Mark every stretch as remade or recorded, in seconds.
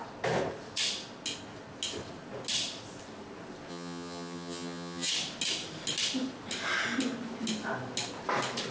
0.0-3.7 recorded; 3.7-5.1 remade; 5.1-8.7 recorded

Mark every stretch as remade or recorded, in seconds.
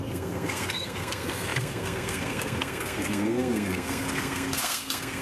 0.0-5.2 remade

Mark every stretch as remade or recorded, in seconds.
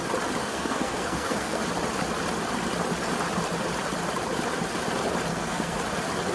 0.0-0.4 recorded; 0.4-1.6 remade; 1.6-5.3 recorded; 5.3-5.8 remade; 5.8-6.3 recorded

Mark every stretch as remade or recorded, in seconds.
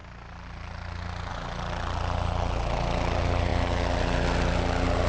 0.0-5.1 recorded